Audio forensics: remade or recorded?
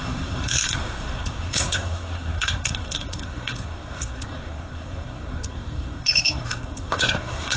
remade